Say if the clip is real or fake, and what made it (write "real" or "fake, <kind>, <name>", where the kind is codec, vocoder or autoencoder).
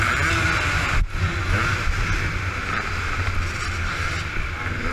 real